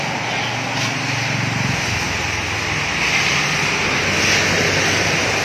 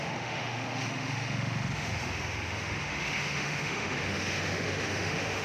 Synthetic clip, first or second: second